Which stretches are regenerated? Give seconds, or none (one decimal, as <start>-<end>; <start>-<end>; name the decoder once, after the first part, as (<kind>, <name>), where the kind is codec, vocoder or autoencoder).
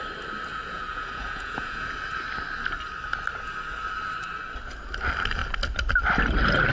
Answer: 0.5-1.9 (vocoder, Vocos)